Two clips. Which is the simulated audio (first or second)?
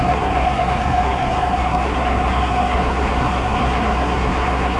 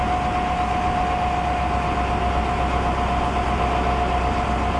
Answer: first